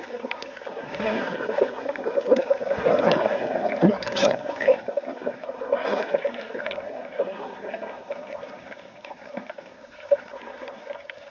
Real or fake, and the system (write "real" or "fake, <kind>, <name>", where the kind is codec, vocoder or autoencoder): fake, codec, SNAC